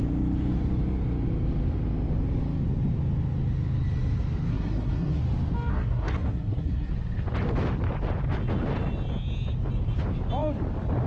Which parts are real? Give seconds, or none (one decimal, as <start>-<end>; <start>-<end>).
0.0-4.5; 5.2-5.7; 6.9-11.1